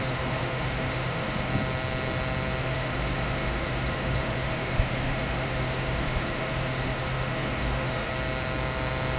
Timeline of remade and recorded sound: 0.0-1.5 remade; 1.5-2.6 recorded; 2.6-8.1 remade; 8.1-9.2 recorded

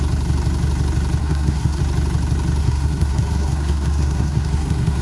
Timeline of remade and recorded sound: 0.0-1.2 recorded; 1.2-1.8 remade; 1.8-2.6 recorded; 2.6-5.0 remade

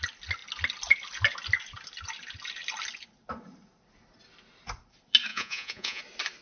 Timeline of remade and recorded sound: 0.0-5.3 recorded; 5.3-6.0 remade; 6.0-6.4 recorded